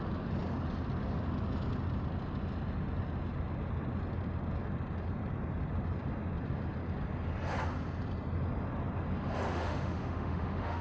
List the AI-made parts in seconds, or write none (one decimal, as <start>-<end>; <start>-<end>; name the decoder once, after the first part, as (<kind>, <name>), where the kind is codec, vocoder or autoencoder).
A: 9.5-10.8 (autoencoder, DAC-VAE)